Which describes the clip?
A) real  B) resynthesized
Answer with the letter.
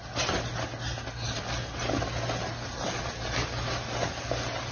A